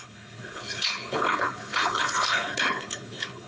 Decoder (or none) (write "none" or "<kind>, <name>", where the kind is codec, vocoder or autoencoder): codec, HILCodec